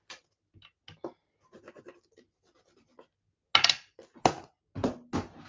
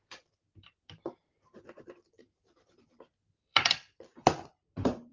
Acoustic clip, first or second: first